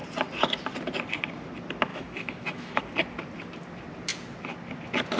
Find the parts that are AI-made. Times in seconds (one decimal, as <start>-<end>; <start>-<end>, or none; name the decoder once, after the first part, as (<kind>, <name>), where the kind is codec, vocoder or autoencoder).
1.9-2.8 (autoencoder, DAC-VAE)